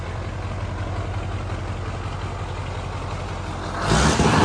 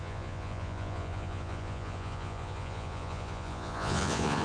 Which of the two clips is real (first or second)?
first